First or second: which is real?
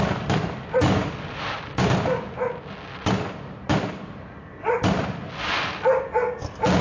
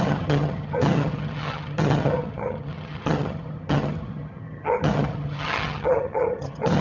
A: first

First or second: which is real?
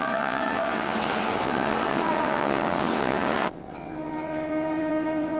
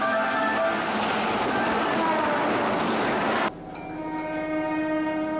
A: second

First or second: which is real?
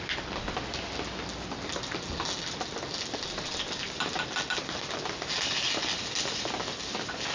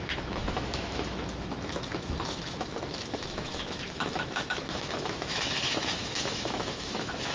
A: first